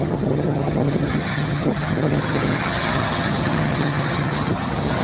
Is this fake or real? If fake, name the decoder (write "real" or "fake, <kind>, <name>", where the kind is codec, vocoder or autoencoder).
fake, vocoder, HiFi-GAN